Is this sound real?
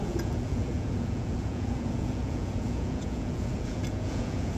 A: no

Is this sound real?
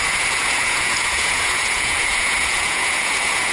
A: no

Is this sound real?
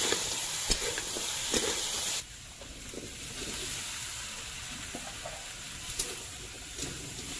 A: yes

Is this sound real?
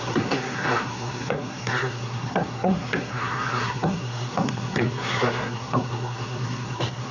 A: no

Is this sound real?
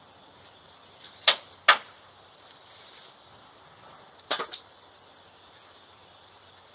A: yes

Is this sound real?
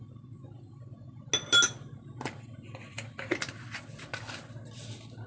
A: yes